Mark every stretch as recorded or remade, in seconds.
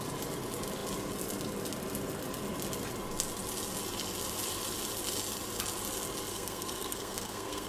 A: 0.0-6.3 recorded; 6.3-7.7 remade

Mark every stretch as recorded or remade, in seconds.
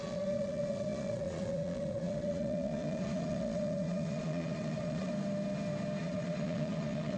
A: 0.0-5.1 remade; 5.1-6.0 recorded; 6.0-7.2 remade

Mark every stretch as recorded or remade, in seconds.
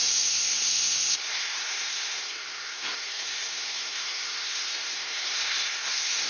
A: 0.0-6.3 remade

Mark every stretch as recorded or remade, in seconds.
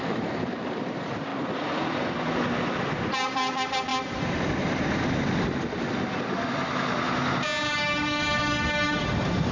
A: 0.0-1.3 remade; 1.3-3.1 recorded; 3.1-3.9 remade; 3.9-9.0 recorded; 9.0-9.5 remade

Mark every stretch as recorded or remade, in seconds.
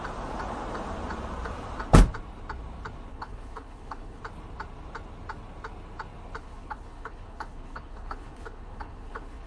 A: 0.0-3.1 recorded; 3.1-4.2 remade; 4.2-6.4 recorded; 6.4-9.5 remade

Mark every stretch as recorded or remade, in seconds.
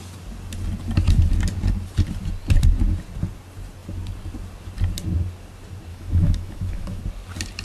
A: 0.0-5.9 recorded; 5.9-7.0 remade; 7.0-7.6 recorded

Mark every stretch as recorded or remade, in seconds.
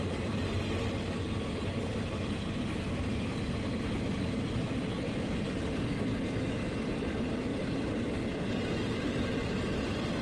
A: 0.0-10.2 recorded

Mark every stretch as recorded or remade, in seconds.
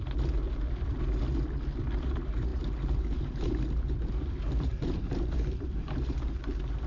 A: 0.0-0.4 remade; 0.4-2.0 recorded; 2.0-6.9 remade